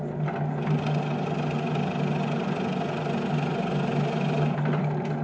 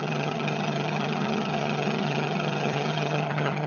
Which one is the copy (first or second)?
second